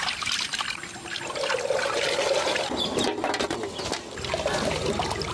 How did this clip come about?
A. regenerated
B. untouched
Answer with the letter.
B